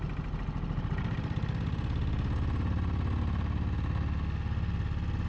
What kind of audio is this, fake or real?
real